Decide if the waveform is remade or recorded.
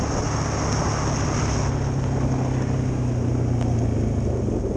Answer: recorded